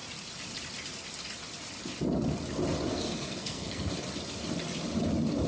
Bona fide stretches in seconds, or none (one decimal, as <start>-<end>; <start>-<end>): 0.0-2.9; 3.9-5.5